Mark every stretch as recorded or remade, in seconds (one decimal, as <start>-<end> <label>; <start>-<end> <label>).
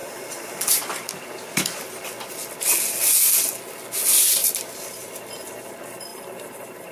0.0-4.4 recorded; 4.4-5.1 remade; 5.1-6.1 recorded; 6.1-6.9 remade